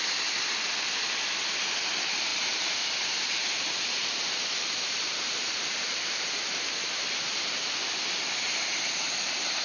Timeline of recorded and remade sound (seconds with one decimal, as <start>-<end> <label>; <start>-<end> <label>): 0.0-2.3 recorded; 2.3-7.0 remade; 7.0-9.6 recorded